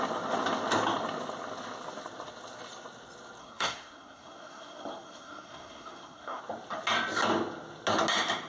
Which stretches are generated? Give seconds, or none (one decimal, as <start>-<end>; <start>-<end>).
3.4-6.4